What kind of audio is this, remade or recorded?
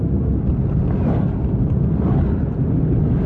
recorded